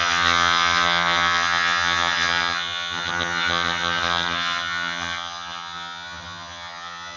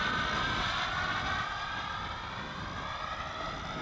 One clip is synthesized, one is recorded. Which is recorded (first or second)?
second